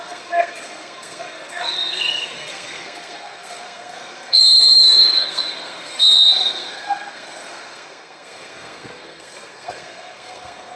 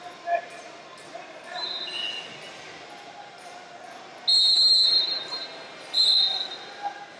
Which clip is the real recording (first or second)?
second